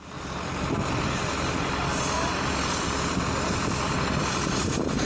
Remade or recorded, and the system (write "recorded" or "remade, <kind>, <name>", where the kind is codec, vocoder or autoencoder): recorded